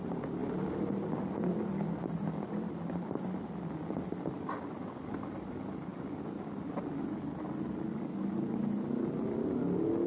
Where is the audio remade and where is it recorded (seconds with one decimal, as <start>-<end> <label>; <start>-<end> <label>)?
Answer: 0.0-10.1 recorded